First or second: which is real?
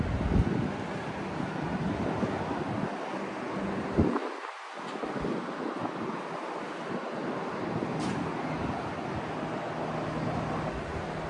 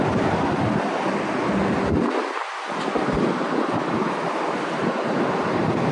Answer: first